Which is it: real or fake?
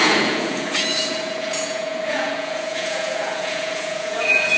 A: fake